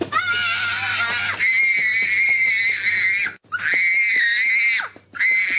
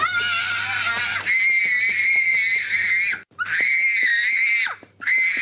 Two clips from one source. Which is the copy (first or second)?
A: second